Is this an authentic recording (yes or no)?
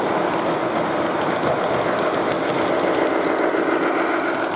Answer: yes